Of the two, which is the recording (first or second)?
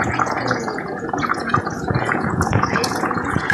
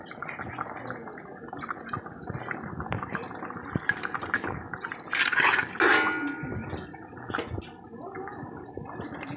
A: second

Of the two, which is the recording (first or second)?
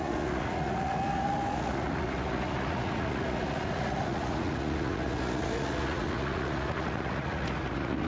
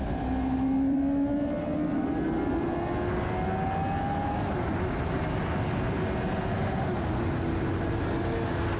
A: second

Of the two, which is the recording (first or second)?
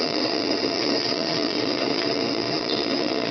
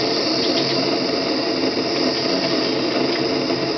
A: second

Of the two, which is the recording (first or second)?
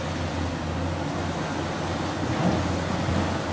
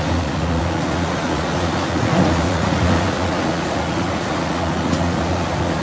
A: first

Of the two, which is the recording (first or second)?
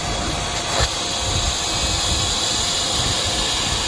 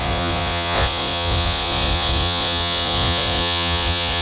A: first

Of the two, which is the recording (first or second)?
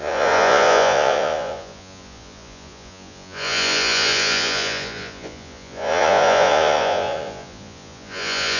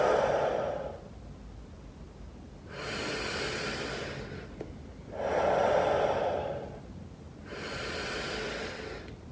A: second